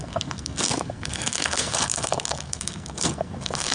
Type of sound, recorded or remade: remade